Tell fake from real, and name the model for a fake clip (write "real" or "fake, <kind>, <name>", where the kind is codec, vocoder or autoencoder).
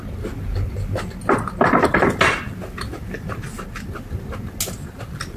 real